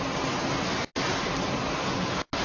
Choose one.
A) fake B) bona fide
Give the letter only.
B